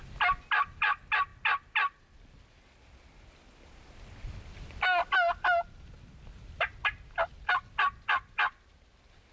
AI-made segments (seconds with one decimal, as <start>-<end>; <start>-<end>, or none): none